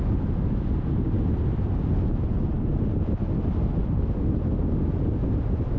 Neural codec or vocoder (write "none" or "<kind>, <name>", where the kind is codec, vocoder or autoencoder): none